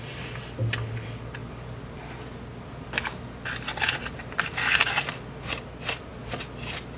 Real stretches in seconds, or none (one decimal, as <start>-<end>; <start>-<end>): 0.0-7.0